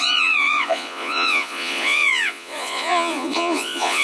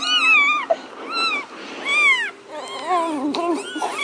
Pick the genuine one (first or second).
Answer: second